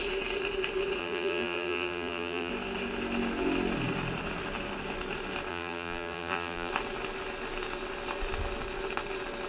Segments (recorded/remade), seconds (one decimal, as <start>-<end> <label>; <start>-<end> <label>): 0.0-1.0 recorded; 1.0-2.5 remade; 2.5-5.5 recorded; 5.5-6.7 remade; 6.7-9.5 recorded